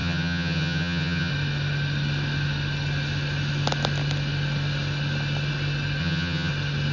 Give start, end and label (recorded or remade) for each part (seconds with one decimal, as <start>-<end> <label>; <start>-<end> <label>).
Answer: 0.0-1.3 remade; 1.3-6.0 recorded; 6.0-6.5 remade; 6.5-6.9 recorded